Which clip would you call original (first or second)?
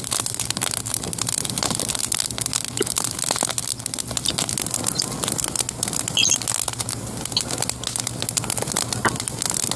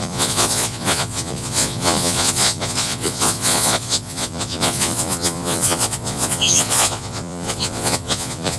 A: first